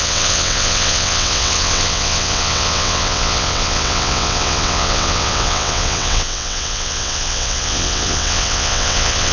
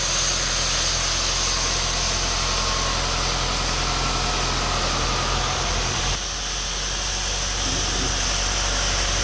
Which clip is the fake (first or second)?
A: first